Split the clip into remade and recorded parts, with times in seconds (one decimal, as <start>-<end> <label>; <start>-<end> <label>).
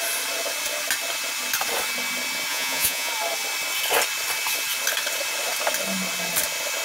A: 0.0-2.5 recorded; 2.5-3.1 remade; 3.1-6.8 recorded